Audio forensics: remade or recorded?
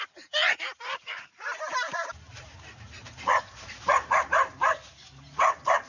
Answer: remade